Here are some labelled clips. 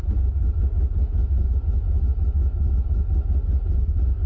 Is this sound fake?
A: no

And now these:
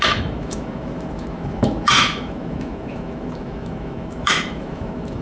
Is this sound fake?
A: yes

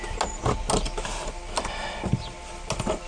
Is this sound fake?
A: no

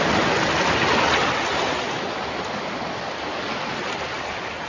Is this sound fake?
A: no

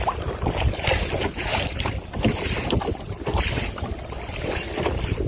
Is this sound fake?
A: no